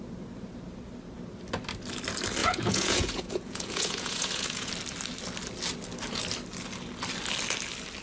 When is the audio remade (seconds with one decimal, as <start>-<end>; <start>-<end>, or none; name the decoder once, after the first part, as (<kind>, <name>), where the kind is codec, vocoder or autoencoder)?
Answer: 2.4-4.7 (vocoder, Vocos)